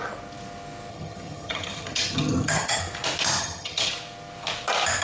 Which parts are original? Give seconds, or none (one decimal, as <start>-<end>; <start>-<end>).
0.0-0.9; 2.8-3.4; 3.9-5.0